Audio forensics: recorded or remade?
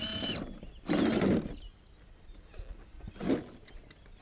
recorded